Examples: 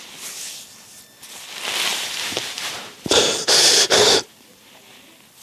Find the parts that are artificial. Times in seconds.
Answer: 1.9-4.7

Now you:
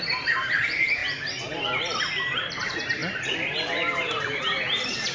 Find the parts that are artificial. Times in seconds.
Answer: 0.0-1.0; 1.8-5.1

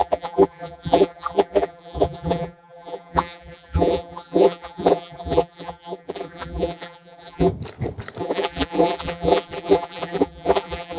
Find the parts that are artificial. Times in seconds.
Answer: 0.0-7.5; 8.2-11.0

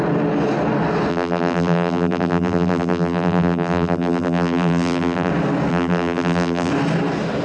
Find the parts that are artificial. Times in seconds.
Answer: 1.1-5.3; 5.7-6.7